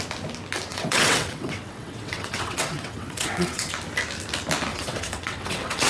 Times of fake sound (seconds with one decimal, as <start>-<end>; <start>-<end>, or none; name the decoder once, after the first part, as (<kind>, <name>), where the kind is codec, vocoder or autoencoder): 0.7-3.7 (vocoder, WaveNeXt); 4.7-5.9